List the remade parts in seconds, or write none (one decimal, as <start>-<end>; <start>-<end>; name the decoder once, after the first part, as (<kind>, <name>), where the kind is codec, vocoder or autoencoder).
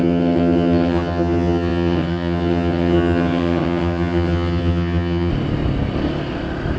0.0-5.3 (vocoder, HiFi-GAN)